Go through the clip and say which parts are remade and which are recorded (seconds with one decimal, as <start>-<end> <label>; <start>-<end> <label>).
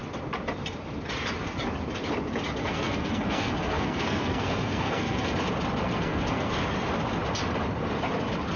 0.0-2.6 recorded; 2.6-5.3 remade; 5.3-5.8 recorded; 5.8-6.5 remade; 6.5-8.6 recorded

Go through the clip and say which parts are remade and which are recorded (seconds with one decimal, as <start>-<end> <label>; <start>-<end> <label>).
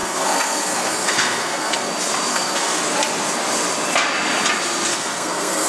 0.0-1.9 remade; 1.9-2.3 recorded; 2.3-2.8 remade; 2.8-4.9 recorded; 4.9-5.7 remade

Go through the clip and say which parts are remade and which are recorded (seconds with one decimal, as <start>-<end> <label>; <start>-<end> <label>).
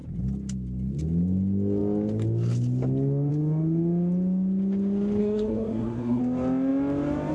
0.0-5.2 recorded; 5.2-6.2 remade; 6.2-7.3 recorded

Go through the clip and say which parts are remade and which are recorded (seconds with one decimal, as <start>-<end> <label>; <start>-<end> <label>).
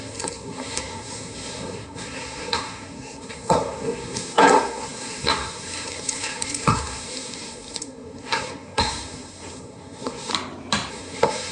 0.0-10.3 remade; 10.3-10.9 recorded; 10.9-11.5 remade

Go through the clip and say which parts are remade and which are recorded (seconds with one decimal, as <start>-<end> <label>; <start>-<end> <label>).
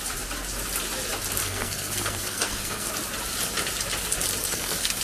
0.0-1.4 recorded; 1.4-2.9 remade; 2.9-4.4 recorded; 4.4-5.0 remade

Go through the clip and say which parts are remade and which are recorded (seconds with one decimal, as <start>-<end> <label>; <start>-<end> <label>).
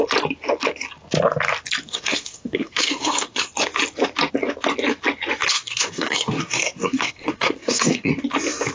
0.0-1.8 recorded; 1.8-3.5 remade; 3.5-5.5 recorded; 5.5-8.1 remade; 8.1-8.7 recorded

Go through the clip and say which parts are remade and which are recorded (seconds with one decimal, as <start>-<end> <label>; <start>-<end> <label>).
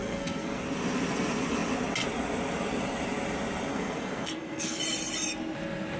0.0-0.6 remade; 0.6-3.7 recorded; 3.7-4.8 remade; 4.8-6.0 recorded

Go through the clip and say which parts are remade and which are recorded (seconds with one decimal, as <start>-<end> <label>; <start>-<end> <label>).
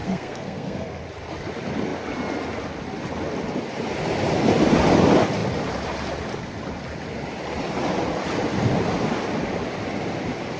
0.0-1.0 remade; 1.0-10.6 recorded